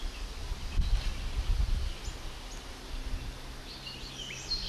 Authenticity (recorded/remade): recorded